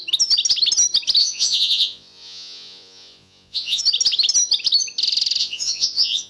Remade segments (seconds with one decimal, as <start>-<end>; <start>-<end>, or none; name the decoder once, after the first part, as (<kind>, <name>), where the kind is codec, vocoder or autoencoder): 1.2-3.8 (vocoder, Vocos); 5.4-6.3